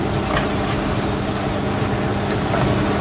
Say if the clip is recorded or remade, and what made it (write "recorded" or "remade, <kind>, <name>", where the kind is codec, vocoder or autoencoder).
recorded